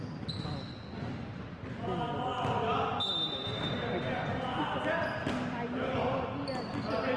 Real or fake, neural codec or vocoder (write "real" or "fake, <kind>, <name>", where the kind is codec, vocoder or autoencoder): real